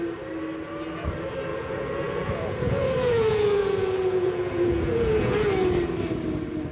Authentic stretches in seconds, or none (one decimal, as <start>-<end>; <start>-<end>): 0.0-1.5; 5.5-6.7